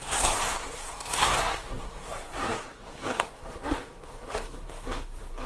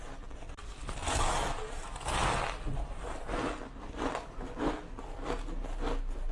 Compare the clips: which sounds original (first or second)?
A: second